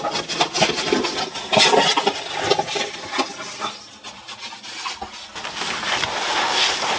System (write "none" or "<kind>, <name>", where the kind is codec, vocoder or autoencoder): none